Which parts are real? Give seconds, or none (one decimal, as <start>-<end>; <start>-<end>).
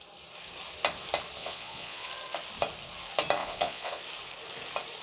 0.0-1.4; 2.1-3.4; 4.0-5.0